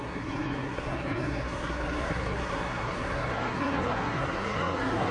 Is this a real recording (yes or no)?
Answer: no